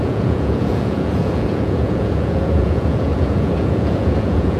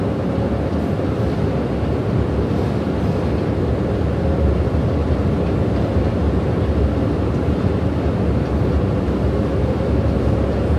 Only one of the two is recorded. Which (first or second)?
second